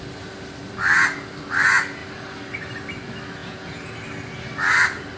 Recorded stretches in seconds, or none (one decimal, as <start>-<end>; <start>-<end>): 0.0-3.4; 3.9-5.2